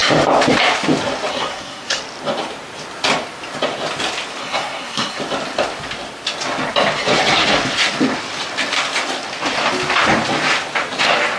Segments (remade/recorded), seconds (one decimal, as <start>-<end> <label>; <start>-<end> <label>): 0.0-1.3 recorded; 1.3-2.0 remade; 2.0-4.4 recorded; 4.4-5.2 remade; 5.2-11.4 recorded